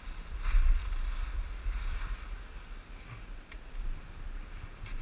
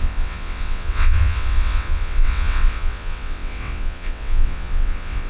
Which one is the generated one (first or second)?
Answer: second